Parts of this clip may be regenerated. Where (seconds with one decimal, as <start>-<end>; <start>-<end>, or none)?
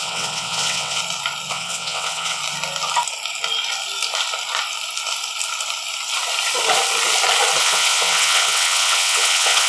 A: 0.0-1.0; 1.5-2.4; 7.6-9.7